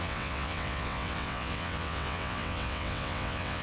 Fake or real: fake